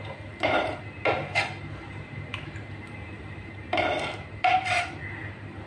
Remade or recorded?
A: remade